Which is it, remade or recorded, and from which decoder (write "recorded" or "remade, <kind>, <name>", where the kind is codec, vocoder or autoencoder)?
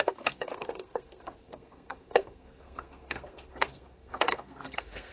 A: remade, codec, SNAC